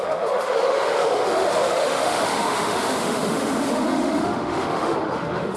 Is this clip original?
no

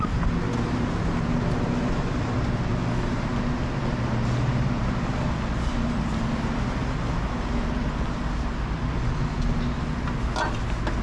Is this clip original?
yes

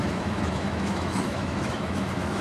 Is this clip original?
no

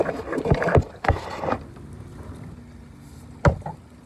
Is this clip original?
yes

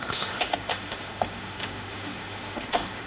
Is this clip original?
no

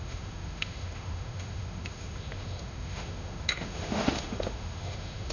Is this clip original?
no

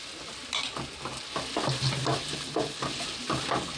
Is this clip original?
yes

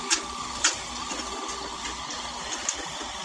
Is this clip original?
yes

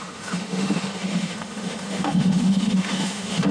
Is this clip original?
no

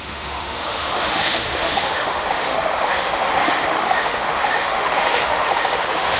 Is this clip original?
no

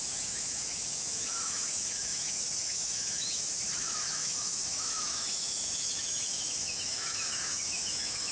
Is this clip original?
no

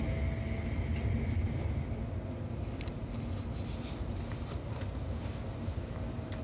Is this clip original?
yes